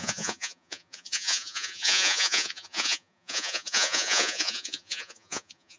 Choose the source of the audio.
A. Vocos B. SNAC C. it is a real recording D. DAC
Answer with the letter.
A